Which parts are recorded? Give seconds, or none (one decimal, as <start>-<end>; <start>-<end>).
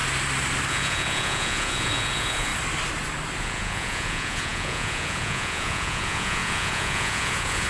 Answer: 0.0-0.7; 2.5-3.4